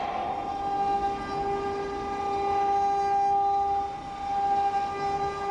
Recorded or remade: recorded